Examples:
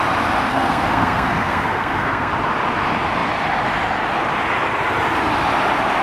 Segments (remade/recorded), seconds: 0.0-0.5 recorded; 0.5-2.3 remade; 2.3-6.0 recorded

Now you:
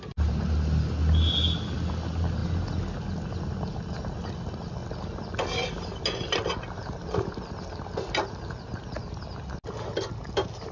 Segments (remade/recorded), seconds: 0.0-10.7 recorded